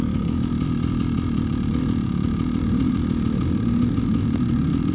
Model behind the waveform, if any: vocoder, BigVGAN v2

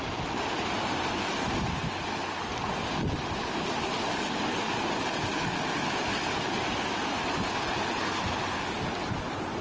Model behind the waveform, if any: none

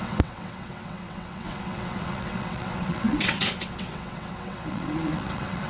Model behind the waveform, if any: vocoder, WaveNeXt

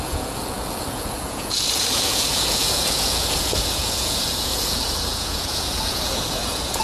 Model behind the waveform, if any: vocoder, Vocos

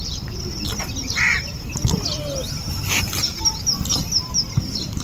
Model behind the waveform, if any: vocoder, BigVGAN v2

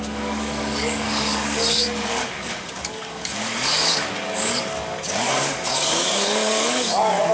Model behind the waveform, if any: codec, DAC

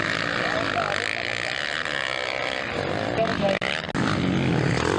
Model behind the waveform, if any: none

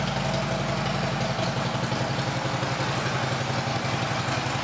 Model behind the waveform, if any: none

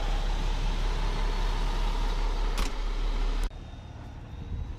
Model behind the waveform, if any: none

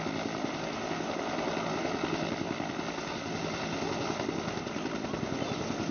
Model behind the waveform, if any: none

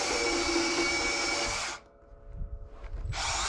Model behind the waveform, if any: none